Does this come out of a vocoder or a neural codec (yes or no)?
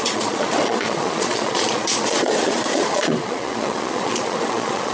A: yes